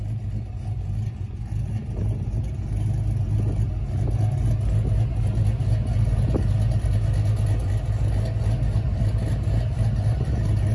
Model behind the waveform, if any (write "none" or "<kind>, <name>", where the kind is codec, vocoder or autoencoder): none